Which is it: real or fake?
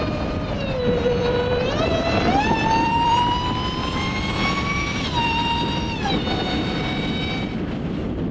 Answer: fake